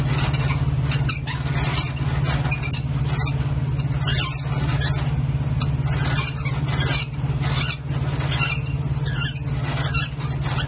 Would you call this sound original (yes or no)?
yes